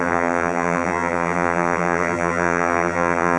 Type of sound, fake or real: fake